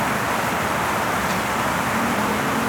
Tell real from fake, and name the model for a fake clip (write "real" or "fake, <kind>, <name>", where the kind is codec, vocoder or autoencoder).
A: real